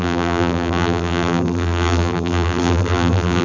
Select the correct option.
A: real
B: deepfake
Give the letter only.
B